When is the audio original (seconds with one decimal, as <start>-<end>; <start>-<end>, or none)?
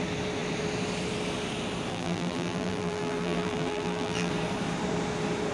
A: 0.0-1.9; 4.3-5.5